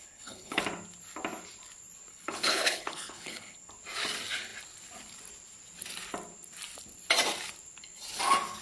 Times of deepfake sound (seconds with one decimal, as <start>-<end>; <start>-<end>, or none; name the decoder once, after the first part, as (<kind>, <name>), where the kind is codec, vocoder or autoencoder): 0.0-0.6 (codec, HILCodec); 2.1-3.7